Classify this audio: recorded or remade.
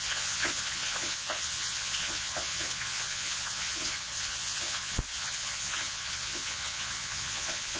remade